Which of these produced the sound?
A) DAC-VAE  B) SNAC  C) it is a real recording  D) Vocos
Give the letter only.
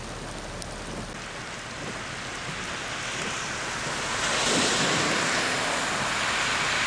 C